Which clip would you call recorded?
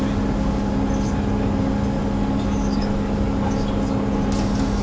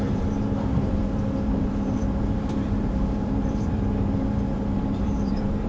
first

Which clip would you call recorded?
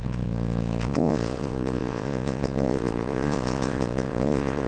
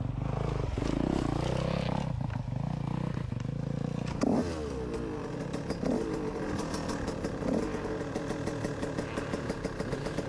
second